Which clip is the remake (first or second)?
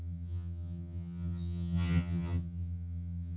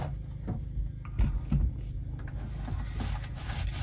first